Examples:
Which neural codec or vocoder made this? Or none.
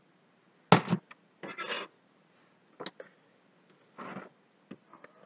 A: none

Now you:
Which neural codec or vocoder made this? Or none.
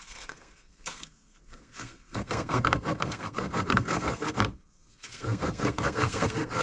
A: codec, SNAC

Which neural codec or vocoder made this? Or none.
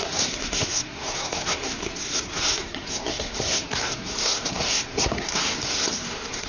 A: codec, SNAC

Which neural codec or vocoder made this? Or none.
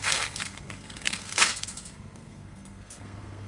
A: codec, SNAC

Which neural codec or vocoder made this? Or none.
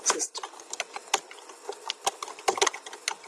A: none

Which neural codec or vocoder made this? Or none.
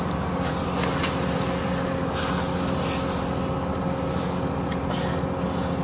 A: none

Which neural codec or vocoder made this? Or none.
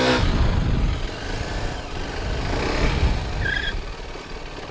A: none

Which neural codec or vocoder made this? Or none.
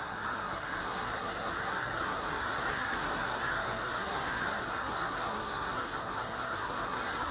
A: codec, SNAC